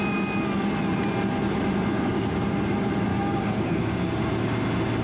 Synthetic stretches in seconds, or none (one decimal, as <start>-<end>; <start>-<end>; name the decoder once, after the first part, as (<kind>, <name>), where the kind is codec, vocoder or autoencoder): 1.9-2.6 (codec, DAC); 3.1-4.3